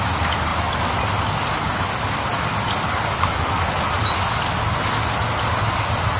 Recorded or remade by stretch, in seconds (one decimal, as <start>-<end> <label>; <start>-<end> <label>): 0.0-6.2 recorded